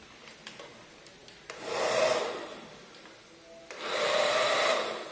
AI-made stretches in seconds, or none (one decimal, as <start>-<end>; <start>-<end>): none